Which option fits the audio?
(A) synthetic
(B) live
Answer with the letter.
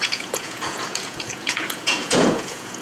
A